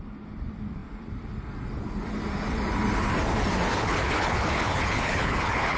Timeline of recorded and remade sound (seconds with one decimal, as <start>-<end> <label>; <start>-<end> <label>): 0.0-3.7 recorded; 3.7-5.8 remade